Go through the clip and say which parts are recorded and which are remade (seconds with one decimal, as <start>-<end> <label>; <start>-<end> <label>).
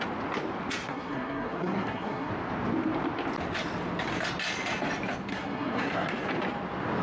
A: 0.0-0.8 recorded; 0.8-2.3 remade; 2.3-5.3 recorded; 5.3-6.1 remade; 6.1-7.0 recorded